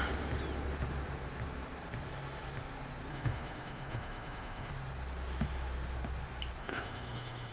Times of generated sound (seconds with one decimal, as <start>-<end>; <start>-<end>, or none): 3.1-4.7; 6.6-7.5